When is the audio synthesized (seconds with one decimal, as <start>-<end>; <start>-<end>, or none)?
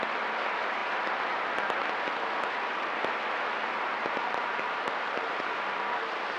3.6-5.3